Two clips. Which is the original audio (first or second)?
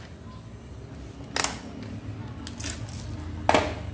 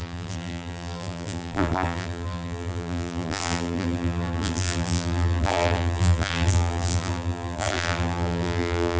first